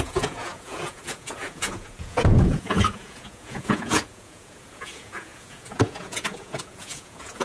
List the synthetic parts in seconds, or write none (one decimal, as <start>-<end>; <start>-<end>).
0.0-7.4